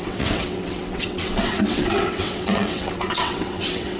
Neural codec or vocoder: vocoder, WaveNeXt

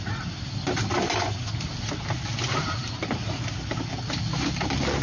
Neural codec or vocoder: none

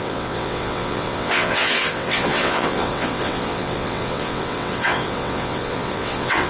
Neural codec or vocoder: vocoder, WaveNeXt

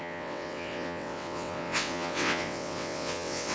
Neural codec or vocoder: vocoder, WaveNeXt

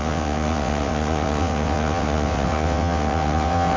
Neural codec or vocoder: vocoder, WaveNeXt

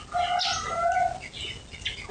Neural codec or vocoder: none